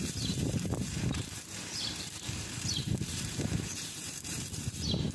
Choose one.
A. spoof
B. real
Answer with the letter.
A